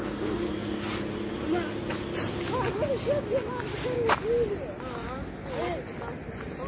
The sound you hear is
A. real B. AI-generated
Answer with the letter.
A